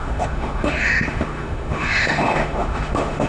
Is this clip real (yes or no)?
no